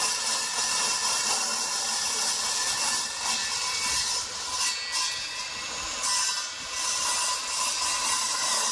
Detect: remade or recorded recorded